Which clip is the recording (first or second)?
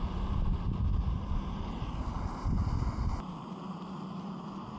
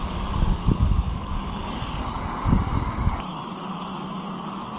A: first